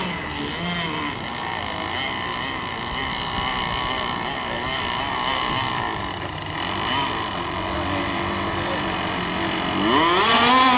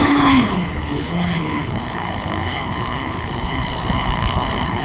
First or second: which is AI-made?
second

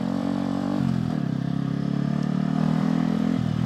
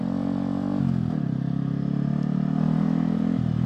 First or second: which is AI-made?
first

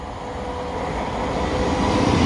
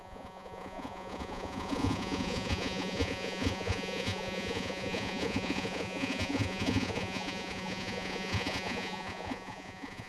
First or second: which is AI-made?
second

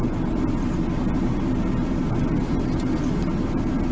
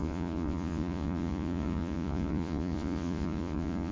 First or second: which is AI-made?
second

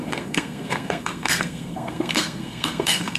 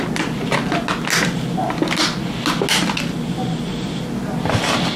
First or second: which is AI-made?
first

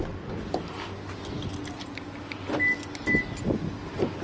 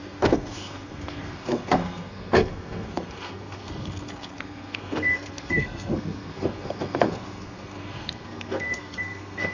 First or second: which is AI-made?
second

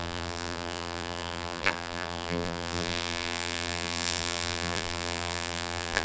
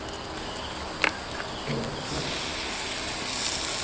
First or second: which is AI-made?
first